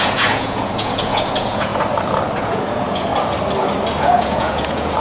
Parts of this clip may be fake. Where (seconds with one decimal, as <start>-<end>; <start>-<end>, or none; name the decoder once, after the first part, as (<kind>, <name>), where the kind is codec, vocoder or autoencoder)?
0.0-1.7 (vocoder, Vocos); 2.4-3.1; 4.0-5.0